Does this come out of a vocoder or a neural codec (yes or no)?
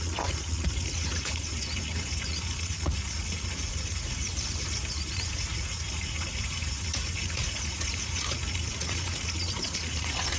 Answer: yes